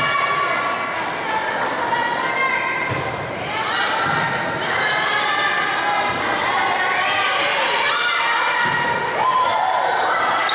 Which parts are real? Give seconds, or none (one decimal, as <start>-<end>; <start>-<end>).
0.0-10.5